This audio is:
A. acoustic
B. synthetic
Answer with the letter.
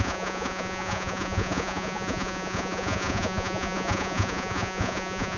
B